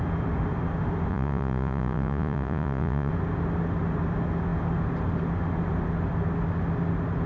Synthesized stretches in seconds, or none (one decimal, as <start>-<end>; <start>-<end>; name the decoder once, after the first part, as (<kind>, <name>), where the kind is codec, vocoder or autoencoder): 1.1-3.1 (vocoder, Vocos)